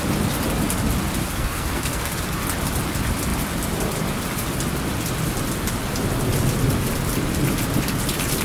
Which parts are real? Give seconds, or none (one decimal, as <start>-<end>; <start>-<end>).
0.0-1.2; 2.2-8.4